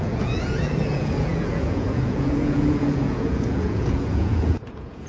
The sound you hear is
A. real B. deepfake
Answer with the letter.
B